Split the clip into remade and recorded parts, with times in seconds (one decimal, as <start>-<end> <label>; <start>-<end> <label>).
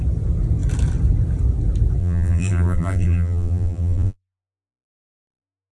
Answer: 0.0-2.0 recorded; 2.0-5.7 remade